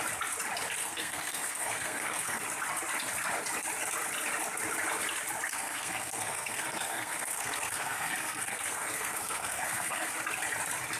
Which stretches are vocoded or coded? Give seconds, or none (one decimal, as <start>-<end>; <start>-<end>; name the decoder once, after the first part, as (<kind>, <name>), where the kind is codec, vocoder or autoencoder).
0.8-2.4 (codec, SNAC); 5.5-10.1